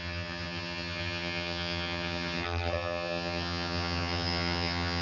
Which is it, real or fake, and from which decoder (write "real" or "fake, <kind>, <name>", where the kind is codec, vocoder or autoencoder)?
fake, vocoder, HiFi-GAN